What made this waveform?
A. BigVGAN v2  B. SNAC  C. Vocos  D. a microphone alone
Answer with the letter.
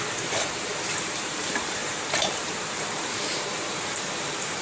A